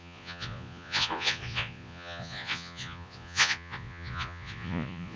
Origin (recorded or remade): remade